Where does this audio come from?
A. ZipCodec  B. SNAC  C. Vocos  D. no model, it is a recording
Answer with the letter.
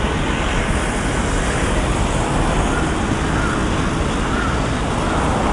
D